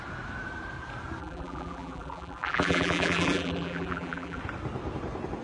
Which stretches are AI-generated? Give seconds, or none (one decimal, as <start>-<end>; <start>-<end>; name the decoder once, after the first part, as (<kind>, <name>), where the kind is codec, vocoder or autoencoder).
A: 1.2-4.4 (vocoder, BigVGAN v2)